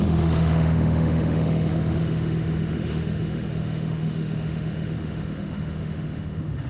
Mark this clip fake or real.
fake